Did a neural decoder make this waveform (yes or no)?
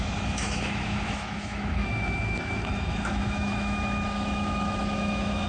yes